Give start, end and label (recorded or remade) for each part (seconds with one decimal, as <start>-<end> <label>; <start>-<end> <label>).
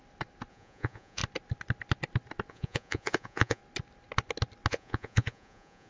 0.0-0.5 recorded; 0.5-1.2 remade; 1.2-2.5 recorded; 2.5-3.6 remade; 3.6-4.7 recorded; 4.7-5.9 remade